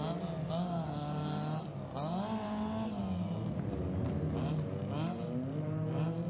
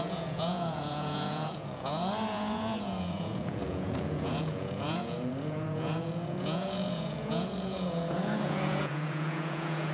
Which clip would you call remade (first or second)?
second